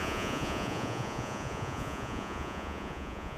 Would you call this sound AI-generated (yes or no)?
yes